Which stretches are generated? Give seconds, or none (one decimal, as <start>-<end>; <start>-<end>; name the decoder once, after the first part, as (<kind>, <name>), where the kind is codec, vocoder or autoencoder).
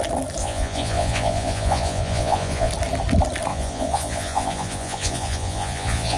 0.4-2.7 (vocoder, Vocos); 3.5-6.2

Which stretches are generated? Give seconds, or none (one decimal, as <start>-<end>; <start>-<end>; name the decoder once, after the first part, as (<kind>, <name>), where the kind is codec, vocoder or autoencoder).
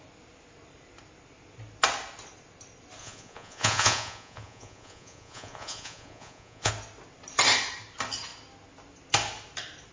3.0-6.7 (vocoder, Vocos)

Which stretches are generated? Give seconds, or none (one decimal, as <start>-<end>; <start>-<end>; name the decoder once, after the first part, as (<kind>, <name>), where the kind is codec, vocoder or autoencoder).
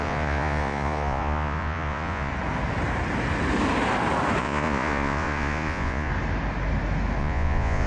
0.0-2.3 (vocoder, Vocos); 4.4-6.1; 7.2-7.9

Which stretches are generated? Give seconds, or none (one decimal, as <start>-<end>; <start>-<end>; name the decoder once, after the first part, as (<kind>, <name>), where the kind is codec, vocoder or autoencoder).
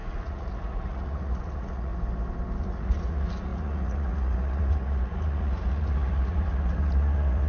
0.0-1.9 (vocoder, Vocos); 2.6-7.5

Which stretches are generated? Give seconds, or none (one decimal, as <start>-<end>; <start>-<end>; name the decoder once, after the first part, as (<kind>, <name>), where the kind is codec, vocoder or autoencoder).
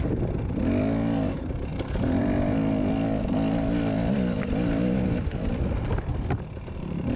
none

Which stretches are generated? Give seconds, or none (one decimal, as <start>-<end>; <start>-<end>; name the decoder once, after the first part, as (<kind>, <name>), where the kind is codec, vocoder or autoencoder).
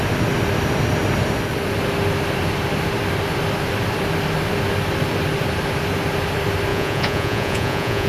6.7-8.1 (vocoder, Vocos)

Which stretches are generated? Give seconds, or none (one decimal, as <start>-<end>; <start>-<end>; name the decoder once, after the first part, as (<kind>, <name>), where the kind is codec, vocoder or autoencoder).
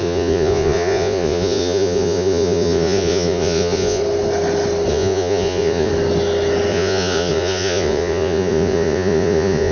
0.0-4.0 (vocoder, Vocos); 4.9-5.9; 6.7-9.7